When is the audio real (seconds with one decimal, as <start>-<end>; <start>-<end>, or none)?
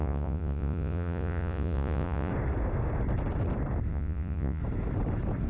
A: 2.3-3.9; 4.6-5.5